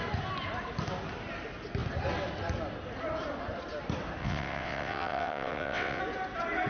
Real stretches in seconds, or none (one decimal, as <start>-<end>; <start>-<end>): 0.0-4.2; 6.0-6.7